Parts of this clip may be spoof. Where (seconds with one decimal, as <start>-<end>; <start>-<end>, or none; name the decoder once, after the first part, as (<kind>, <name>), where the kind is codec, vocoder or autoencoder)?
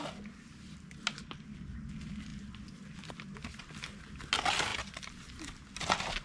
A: none